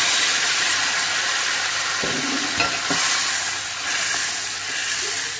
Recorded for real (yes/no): yes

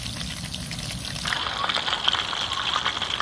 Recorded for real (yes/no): yes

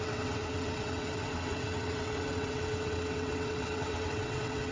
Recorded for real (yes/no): no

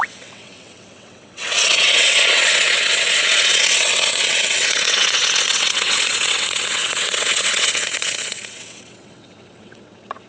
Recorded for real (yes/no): no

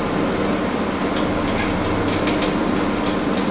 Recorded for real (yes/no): yes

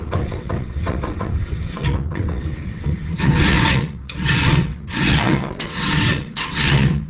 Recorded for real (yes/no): no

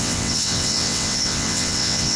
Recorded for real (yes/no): no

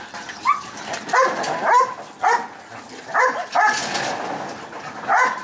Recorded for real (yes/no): yes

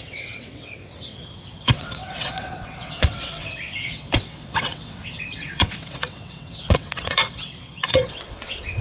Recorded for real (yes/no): no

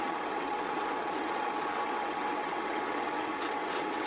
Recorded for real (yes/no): no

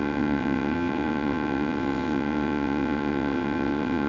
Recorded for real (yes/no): no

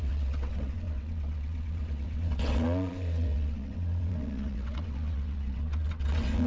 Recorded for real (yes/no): no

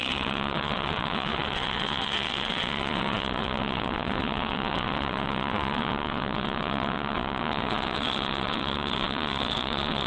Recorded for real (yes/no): no